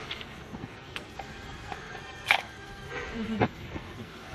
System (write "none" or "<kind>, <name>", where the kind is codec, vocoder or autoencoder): codec, SNAC